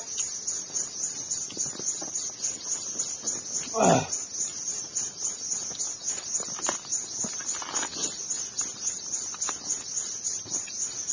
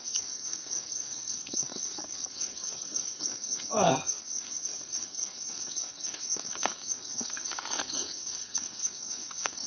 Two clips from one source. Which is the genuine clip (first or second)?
first